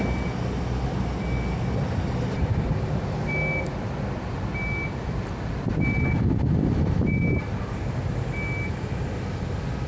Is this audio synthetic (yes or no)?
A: no